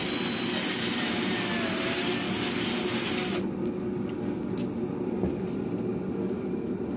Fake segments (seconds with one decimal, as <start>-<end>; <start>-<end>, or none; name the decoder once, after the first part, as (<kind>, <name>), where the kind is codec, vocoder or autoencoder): none